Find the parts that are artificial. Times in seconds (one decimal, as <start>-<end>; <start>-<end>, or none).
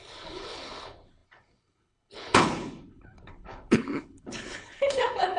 0.0-5.4